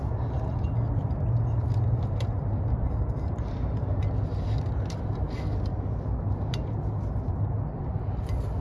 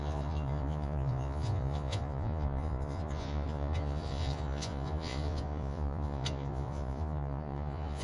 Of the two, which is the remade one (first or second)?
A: second